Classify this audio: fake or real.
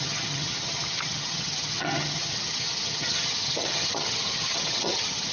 fake